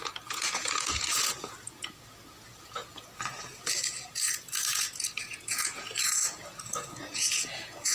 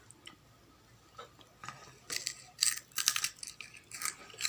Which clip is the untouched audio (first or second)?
second